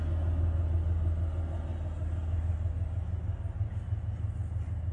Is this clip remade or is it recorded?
recorded